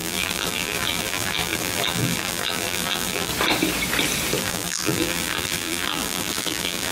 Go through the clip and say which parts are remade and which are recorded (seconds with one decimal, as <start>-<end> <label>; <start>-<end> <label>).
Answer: 0.0-3.3 remade; 3.3-4.4 recorded; 4.4-6.9 remade